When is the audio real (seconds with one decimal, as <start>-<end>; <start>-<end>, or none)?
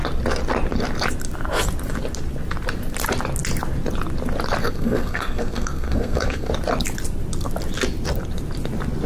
0.0-4.6; 6.5-9.1